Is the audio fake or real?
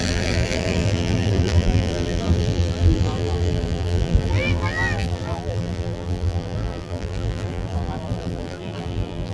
fake